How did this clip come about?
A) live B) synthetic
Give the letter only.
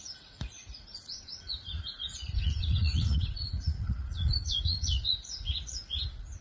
B